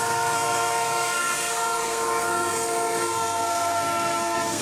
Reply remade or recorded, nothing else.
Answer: remade